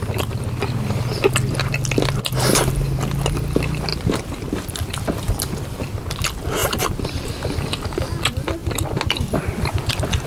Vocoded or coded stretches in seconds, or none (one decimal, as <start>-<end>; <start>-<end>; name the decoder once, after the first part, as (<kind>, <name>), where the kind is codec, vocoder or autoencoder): 3.9-5.0 (vocoder, BigVGAN v2); 6.6-8.1; 8.6-9.9